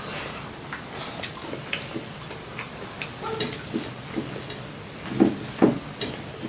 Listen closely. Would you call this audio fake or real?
real